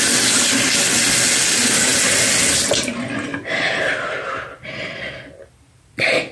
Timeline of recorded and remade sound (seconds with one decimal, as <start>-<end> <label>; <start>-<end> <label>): 0.0-6.3 recorded